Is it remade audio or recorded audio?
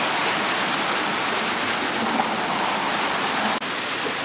recorded